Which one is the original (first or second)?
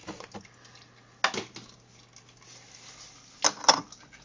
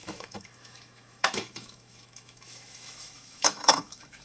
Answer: first